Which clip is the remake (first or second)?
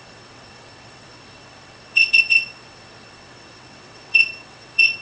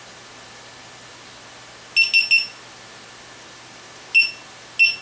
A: first